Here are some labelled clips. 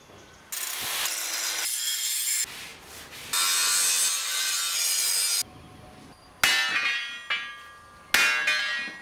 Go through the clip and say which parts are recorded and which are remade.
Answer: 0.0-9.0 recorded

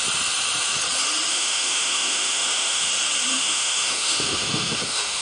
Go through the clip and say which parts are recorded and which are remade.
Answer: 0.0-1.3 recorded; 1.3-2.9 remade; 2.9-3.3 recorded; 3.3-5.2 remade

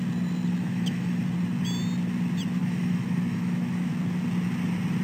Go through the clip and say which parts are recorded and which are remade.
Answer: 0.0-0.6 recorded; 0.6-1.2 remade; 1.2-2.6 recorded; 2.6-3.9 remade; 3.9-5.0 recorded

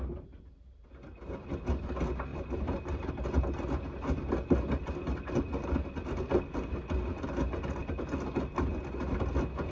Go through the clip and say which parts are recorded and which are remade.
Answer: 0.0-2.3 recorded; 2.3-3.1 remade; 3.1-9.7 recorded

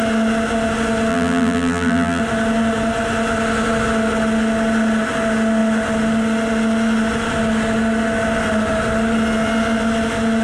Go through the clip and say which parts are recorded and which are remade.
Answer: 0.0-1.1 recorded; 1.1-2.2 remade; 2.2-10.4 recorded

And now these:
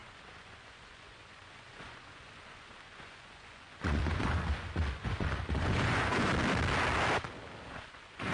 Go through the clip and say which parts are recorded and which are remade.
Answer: 0.0-6.3 remade; 6.3-7.7 recorded; 7.7-8.3 remade

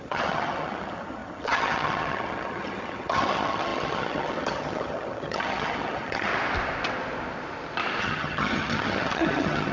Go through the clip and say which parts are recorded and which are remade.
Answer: 0.0-6.3 remade; 6.3-8.0 recorded; 8.0-9.7 remade